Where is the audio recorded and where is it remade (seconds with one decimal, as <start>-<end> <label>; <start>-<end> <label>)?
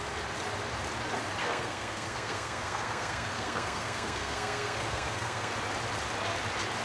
0.0-1.4 recorded; 1.4-5.5 remade; 5.5-6.8 recorded